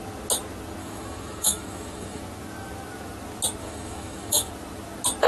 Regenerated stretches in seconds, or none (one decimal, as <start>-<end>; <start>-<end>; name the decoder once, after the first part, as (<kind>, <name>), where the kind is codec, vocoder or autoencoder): 0.8-2.2 (autoencoder, DAC-VAE); 3.6-4.5